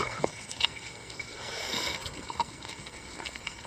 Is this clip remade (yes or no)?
yes